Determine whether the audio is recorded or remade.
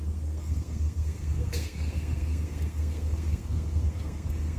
remade